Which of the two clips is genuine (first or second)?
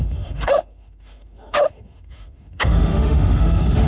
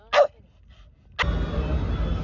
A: second